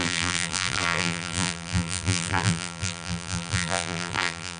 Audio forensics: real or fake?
fake